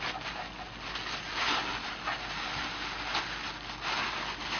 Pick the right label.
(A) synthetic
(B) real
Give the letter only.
B